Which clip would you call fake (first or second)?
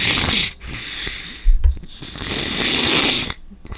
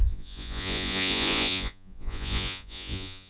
second